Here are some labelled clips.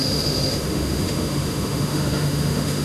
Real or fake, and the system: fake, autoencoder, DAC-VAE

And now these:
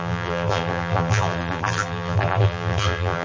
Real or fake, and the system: fake, vocoder, BigVGAN v2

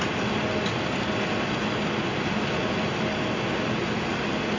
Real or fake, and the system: real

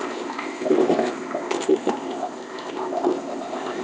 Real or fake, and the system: fake, codec, ZipCodec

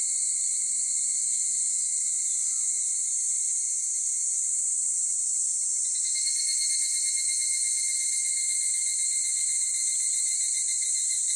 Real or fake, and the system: real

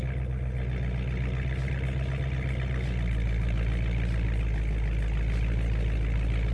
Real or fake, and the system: real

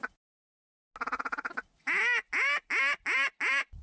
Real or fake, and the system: real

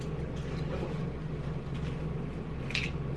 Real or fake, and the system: real